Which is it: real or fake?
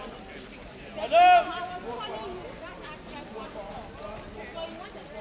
real